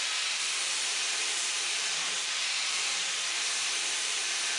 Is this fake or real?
fake